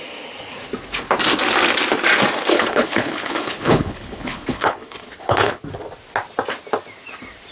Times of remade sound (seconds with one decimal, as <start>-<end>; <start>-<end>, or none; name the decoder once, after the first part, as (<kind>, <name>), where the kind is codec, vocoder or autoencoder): 2.5-5.6 (codec, HILCodec)